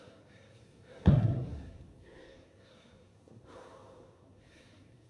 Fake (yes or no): yes